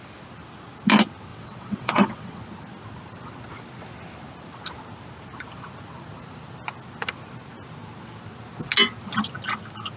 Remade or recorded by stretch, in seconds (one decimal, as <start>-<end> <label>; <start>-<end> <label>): 0.0-1.3 recorded; 1.3-2.4 remade; 2.4-10.0 recorded